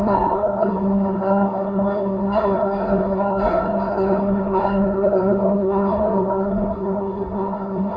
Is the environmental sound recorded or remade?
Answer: remade